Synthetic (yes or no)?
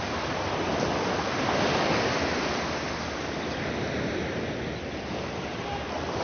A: no